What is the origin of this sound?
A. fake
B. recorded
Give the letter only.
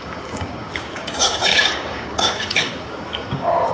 A